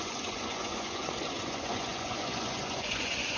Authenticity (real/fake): fake